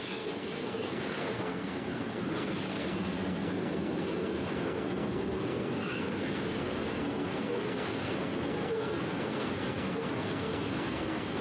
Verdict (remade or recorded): remade